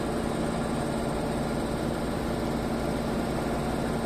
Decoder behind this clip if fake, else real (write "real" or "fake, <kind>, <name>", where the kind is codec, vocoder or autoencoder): real